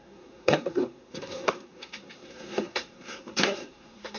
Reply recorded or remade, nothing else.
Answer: remade